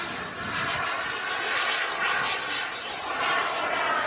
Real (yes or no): yes